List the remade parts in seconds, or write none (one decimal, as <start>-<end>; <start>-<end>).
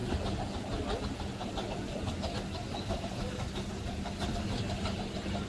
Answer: none